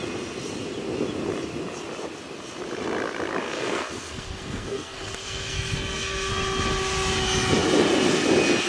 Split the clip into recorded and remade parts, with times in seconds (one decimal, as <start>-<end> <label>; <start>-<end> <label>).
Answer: 0.0-3.4 recorded; 3.4-6.3 remade; 6.3-8.7 recorded